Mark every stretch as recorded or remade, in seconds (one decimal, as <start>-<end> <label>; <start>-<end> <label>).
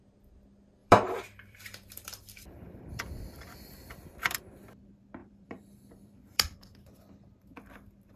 0.0-0.8 recorded; 0.8-4.4 remade; 4.4-5.2 recorded; 5.2-7.0 remade; 7.0-8.2 recorded